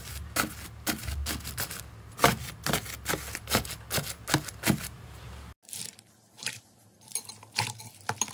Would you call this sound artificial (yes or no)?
no